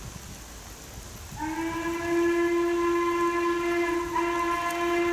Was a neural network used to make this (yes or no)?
no